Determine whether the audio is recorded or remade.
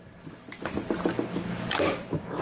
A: recorded